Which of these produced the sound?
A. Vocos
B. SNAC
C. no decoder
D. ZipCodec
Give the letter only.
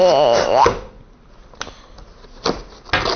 C